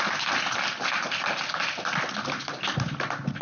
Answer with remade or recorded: recorded